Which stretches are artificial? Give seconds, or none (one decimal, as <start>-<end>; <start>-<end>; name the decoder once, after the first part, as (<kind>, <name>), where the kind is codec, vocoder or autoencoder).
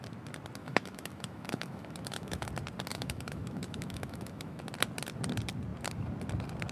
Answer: 0.6-2.5 (autoencoder, DAC-VAE); 2.9-4.6